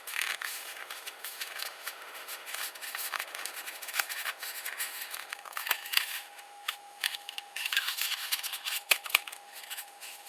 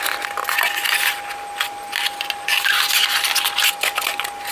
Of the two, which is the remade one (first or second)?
first